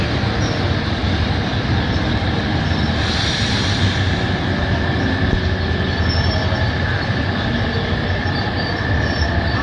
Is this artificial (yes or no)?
no